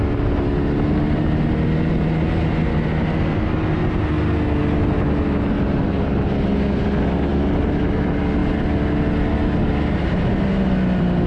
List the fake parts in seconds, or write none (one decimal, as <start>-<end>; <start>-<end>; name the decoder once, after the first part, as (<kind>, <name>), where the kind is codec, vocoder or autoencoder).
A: none